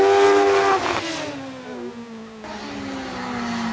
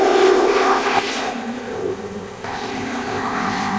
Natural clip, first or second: first